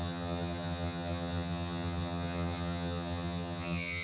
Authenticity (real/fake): fake